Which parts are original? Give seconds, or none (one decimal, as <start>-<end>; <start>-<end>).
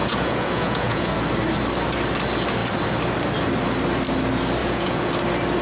1.1-4.6; 5.1-5.6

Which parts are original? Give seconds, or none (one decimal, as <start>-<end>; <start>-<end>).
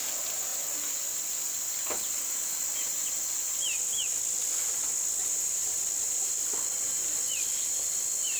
0.0-5.2; 5.8-8.4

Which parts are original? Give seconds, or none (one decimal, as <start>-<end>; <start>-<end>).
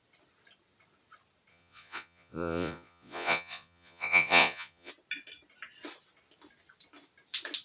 0.0-1.5; 4.9-7.6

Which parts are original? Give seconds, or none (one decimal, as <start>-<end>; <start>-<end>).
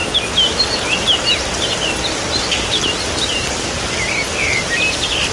0.0-5.3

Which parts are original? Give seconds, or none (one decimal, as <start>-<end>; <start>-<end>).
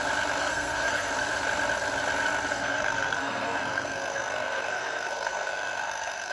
0.0-0.4; 1.1-2.5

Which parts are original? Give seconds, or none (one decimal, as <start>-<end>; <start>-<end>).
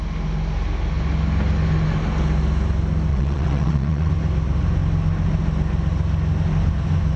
0.0-3.1; 4.1-7.2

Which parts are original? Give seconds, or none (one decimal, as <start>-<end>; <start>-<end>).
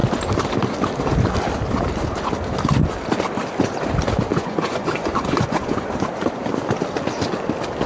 0.0-4.3; 5.9-7.9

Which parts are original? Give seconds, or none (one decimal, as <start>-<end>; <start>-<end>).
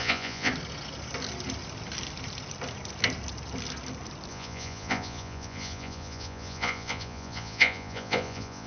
0.5-4.3